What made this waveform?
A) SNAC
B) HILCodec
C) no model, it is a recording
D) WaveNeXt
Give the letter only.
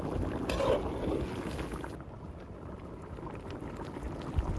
C